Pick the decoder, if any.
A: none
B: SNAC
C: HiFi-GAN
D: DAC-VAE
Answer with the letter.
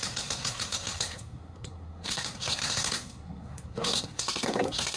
B